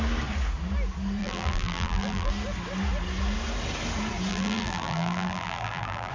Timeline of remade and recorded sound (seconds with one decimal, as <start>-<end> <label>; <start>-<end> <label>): 0.0-1.2 recorded; 1.2-2.3 remade; 2.3-4.3 recorded; 4.3-6.1 remade